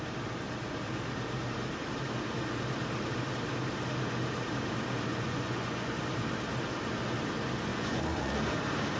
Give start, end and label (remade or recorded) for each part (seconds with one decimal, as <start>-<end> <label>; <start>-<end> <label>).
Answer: 0.0-5.1 recorded; 5.1-5.9 remade; 5.9-7.7 recorded; 7.7-8.4 remade; 8.4-9.0 recorded